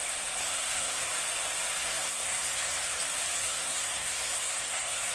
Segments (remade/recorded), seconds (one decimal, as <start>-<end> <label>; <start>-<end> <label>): 0.0-0.4 recorded; 0.4-1.1 remade; 1.1-1.8 recorded; 1.8-2.9 remade; 2.9-3.4 recorded; 3.4-5.1 remade